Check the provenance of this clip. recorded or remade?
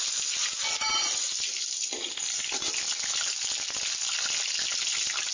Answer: recorded